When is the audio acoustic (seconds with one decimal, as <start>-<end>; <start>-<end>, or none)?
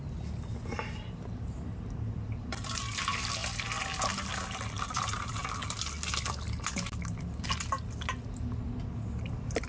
0.0-9.7